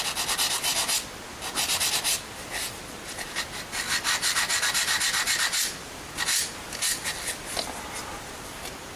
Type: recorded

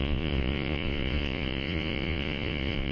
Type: remade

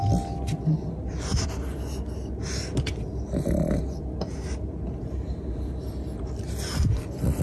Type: recorded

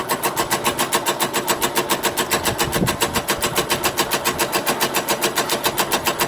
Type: recorded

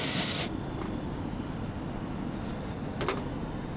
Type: recorded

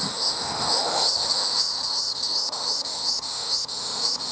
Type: remade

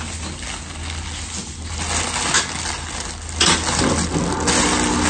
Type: recorded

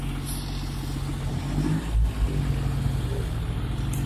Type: recorded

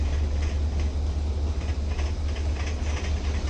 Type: recorded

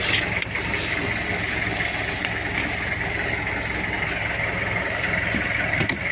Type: recorded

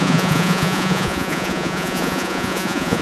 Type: remade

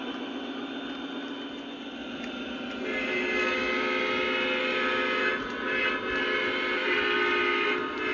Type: recorded